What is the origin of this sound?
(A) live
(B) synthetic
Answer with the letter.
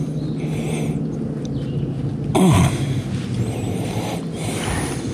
A